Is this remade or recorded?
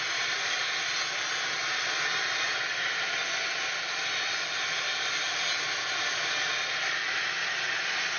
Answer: recorded